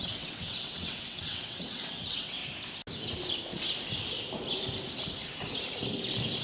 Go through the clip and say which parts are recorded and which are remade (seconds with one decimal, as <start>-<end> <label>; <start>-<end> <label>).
0.0-2.4 remade; 2.4-6.4 recorded

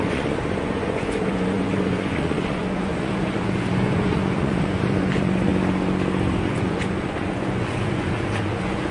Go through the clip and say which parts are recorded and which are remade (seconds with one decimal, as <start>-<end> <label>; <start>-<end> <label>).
0.0-5.5 remade; 5.5-6.4 recorded; 6.4-8.9 remade

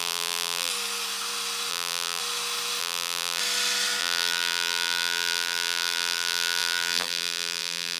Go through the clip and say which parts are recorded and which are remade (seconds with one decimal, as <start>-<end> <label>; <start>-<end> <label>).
0.0-0.7 remade; 0.7-1.7 recorded; 1.7-2.2 remade; 2.2-2.8 recorded; 2.8-3.4 remade; 3.4-4.0 recorded; 4.0-8.0 remade

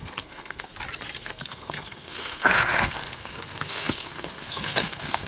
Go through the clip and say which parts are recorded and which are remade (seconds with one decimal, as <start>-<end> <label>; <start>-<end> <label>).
0.0-0.7 remade; 0.7-1.2 recorded; 1.2-5.3 remade

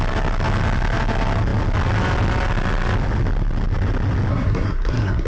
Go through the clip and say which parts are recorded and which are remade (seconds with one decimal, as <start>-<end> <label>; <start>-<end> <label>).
0.0-4.3 recorded; 4.3-5.3 remade

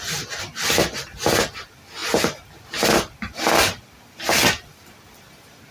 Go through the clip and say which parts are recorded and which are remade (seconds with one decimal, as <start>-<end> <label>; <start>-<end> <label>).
0.0-2.0 remade; 2.0-5.7 recorded

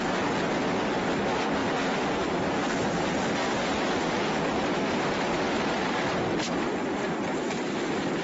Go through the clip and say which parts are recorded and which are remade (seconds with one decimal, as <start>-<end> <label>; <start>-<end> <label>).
0.0-3.4 recorded; 3.4-6.0 remade; 6.0-8.2 recorded